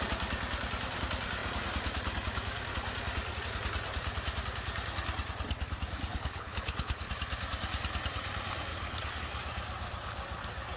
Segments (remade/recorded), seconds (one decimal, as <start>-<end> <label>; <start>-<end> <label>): 0.0-6.1 recorded; 6.1-7.1 remade; 7.1-8.7 recorded; 8.7-9.2 remade; 9.2-10.8 recorded